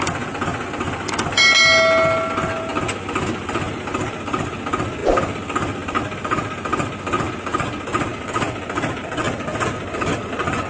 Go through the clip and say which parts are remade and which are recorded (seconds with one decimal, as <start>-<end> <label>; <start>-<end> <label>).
0.0-10.7 recorded